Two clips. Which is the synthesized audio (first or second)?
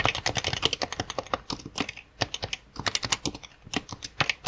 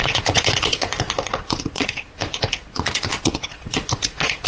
second